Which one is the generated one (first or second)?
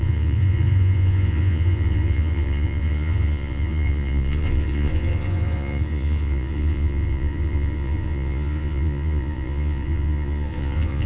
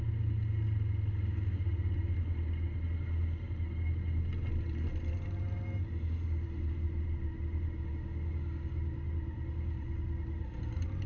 first